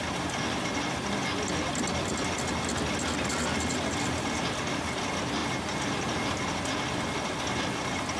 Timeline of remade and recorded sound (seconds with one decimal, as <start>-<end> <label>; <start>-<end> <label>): 0.0-5.4 recorded; 5.4-6.4 remade; 6.4-8.2 recorded